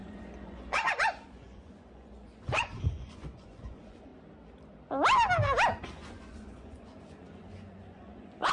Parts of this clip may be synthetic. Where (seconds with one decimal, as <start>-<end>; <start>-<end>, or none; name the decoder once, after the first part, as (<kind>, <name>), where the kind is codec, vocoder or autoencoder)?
0.0-4.1 (vocoder, Vocos); 6.1-8.5